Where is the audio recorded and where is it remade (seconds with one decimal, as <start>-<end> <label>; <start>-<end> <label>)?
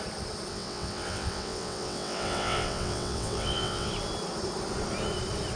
0.0-0.5 recorded; 0.5-3.9 remade; 3.9-5.6 recorded